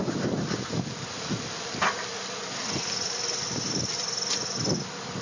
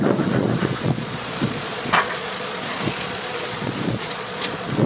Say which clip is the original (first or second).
first